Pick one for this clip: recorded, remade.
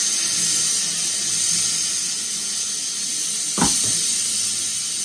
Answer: recorded